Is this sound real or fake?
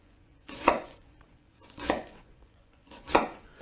fake